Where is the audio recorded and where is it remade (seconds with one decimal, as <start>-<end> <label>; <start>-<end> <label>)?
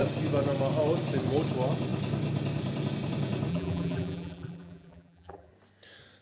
0.0-3.5 recorded; 3.5-5.5 remade; 5.5-6.2 recorded